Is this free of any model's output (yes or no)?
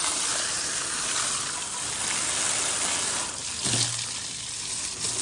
yes